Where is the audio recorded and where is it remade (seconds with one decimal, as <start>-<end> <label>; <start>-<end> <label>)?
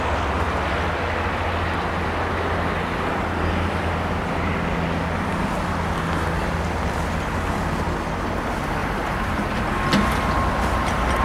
0.0-8.8 recorded; 8.8-9.7 remade; 9.7-11.2 recorded